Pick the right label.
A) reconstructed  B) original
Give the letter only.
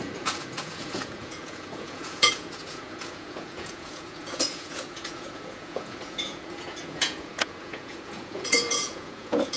A